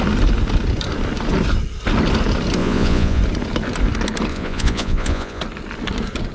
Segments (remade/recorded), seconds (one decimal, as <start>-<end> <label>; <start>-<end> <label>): 0.0-2.6 recorded; 2.6-3.2 remade; 3.2-4.3 recorded; 4.3-5.4 remade; 5.4-6.3 recorded

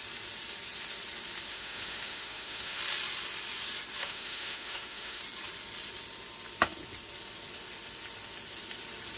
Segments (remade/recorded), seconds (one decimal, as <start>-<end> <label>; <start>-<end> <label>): 0.0-1.5 recorded; 1.5-2.8 remade; 2.8-4.0 recorded; 4.0-5.2 remade; 5.2-9.2 recorded

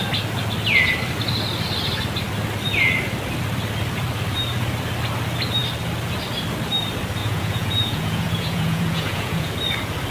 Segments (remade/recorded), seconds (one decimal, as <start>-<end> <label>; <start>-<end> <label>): 0.0-7.2 recorded; 7.2-9.5 remade; 9.5-10.1 recorded